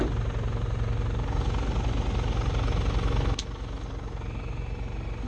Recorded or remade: recorded